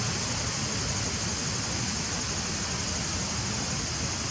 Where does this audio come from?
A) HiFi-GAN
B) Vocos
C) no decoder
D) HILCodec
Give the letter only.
C